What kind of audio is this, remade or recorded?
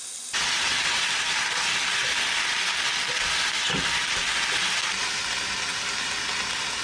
recorded